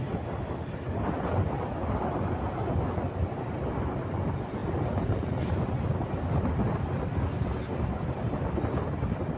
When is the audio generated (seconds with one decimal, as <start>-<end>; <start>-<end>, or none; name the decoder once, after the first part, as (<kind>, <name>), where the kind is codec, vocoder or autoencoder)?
none